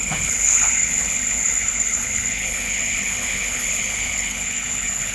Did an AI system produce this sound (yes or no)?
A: yes